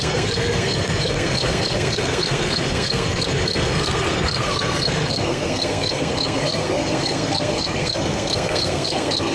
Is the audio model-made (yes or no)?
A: yes